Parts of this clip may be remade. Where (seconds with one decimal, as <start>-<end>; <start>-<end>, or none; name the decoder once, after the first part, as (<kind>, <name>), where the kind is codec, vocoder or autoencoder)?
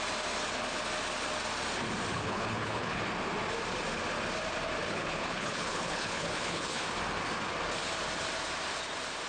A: 2.1-3.0 (codec, HILCodec); 4.8-6.8